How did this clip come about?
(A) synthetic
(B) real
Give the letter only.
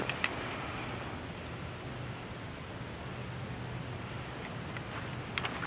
B